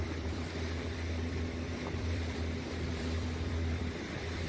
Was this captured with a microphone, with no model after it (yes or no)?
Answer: no